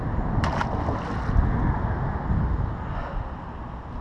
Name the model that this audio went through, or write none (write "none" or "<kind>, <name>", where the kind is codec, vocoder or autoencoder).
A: none